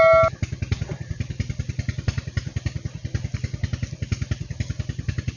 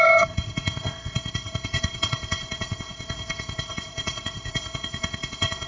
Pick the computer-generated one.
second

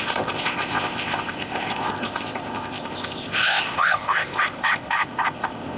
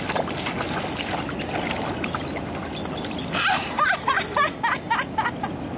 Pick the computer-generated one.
first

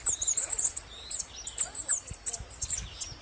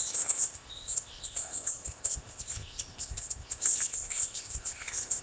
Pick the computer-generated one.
second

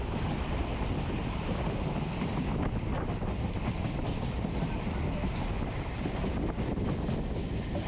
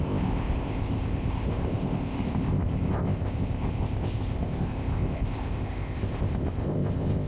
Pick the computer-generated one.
second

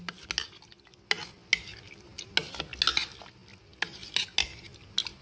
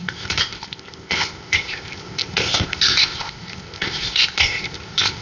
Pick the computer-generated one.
second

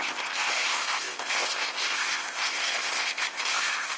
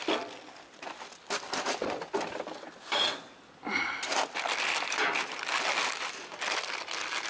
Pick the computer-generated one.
first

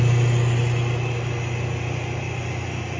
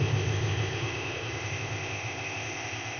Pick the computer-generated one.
second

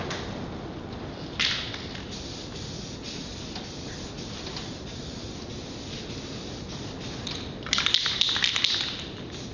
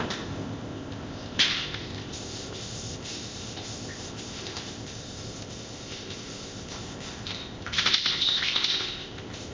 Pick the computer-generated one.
second